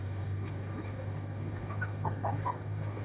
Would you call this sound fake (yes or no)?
yes